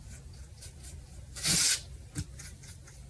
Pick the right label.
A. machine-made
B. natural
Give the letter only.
B